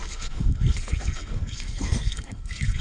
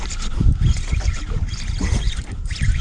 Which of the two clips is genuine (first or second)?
second